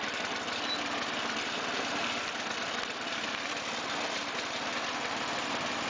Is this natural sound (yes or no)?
yes